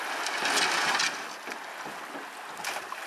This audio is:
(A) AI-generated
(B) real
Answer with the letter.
B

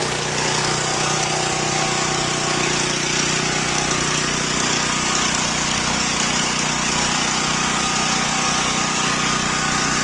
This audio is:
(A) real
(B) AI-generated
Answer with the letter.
B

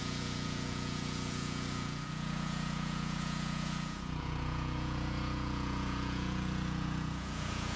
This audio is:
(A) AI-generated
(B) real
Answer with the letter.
A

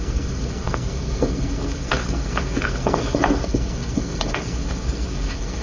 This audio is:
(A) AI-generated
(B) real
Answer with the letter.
A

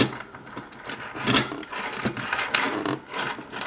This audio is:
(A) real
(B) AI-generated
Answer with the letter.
A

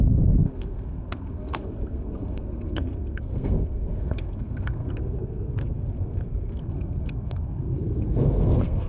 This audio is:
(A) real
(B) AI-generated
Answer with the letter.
B